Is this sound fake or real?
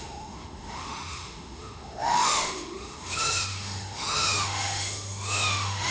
fake